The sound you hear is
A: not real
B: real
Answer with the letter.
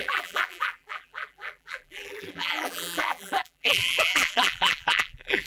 A